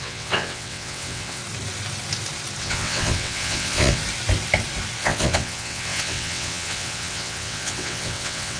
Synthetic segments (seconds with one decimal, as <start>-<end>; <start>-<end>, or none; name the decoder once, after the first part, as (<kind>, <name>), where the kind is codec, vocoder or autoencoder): 0.0-1.4 (vocoder, WaveNeXt); 2.6-4.0; 5.0-8.6